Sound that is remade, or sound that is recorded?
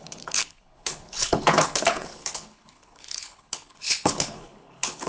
remade